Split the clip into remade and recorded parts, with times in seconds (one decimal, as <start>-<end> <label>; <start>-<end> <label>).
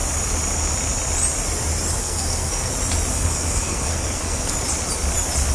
0.0-2.0 recorded; 2.0-2.7 remade; 2.7-3.1 recorded; 3.1-4.5 remade; 4.5-5.5 recorded